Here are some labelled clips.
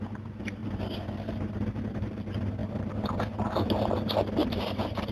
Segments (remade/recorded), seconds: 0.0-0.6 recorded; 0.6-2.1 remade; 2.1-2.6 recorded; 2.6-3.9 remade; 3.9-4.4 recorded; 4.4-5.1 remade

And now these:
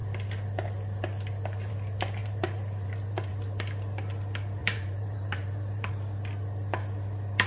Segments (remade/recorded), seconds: 0.0-2.2 recorded; 2.2-3.3 remade; 3.3-4.6 recorded; 4.6-5.9 remade; 5.9-7.5 recorded

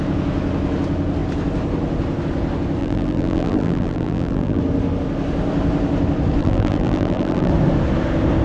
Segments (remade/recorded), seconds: 0.0-2.8 recorded; 2.8-4.6 remade; 4.6-6.4 recorded; 6.4-7.5 remade; 7.5-8.4 recorded

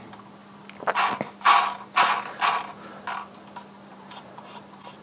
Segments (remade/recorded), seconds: 0.0-3.9 recorded; 3.9-5.0 remade

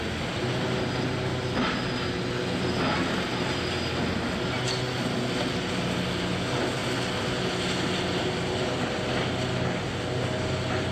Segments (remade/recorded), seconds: 0.0-10.9 recorded